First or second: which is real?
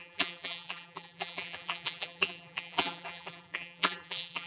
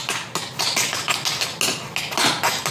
second